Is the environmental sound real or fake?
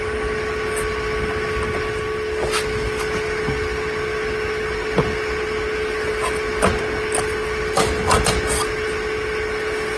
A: real